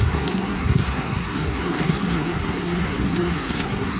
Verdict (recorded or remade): remade